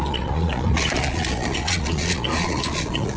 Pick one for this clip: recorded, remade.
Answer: remade